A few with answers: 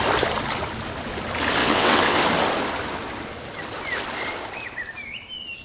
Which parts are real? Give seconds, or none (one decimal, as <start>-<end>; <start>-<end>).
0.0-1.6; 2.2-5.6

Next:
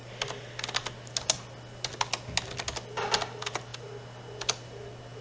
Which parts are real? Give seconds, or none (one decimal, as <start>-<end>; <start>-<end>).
0.0-5.2

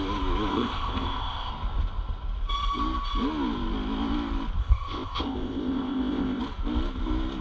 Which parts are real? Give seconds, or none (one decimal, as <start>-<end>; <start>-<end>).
0.0-0.5; 1.5-4.6; 6.4-7.4

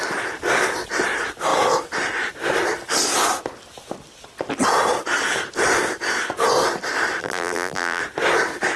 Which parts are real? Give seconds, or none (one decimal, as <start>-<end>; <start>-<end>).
0.0-7.2; 8.0-8.8

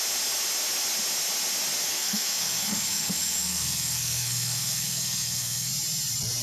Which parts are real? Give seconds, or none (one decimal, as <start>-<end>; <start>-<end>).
0.0-1.9; 5.7-6.4

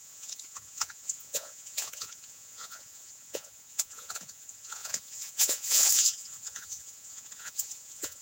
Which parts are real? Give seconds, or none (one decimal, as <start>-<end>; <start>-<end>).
none

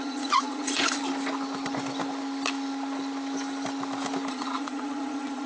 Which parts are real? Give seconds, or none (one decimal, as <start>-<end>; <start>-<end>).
1.0-4.3